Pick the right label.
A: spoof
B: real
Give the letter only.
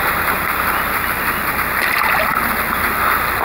B